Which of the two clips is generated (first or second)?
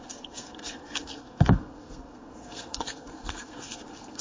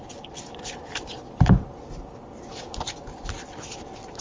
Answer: first